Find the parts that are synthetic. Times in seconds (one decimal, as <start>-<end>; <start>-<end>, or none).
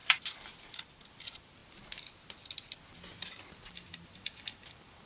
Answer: 1.1-1.6; 3.7-5.1